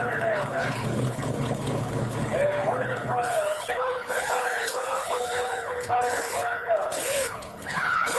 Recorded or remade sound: remade